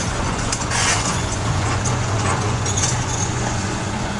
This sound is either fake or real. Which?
fake